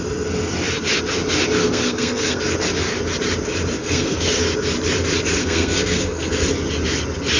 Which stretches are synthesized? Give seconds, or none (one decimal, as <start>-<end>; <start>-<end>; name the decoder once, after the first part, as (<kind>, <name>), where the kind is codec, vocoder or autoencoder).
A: 1.6-2.4 (codec, SNAC); 3.8-4.4; 5.4-6.3